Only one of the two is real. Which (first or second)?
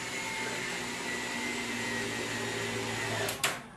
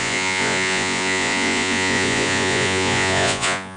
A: first